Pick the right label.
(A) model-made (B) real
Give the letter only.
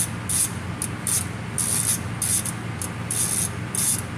B